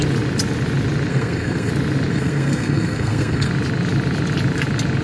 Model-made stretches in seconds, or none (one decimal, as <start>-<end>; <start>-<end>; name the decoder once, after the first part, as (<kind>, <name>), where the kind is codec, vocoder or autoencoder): 1.1-1.7 (codec, SNAC); 2.1-3.5